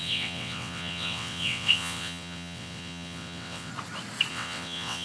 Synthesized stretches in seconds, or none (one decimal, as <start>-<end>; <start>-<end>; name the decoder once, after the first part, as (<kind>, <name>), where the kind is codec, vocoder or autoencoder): 0.0-3.7 (vocoder, WaveNeXt); 4.3-5.0